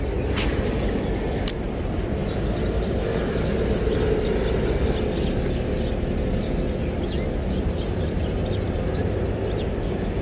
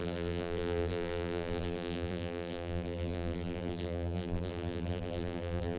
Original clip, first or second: first